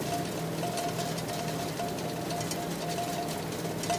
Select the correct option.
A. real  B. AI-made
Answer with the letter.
A